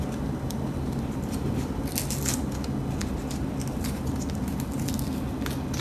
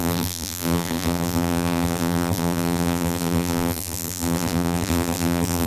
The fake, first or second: second